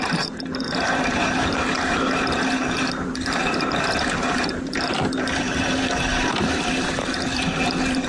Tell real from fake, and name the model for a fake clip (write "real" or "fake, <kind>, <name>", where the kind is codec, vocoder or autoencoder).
fake, vocoder, BigVGAN v2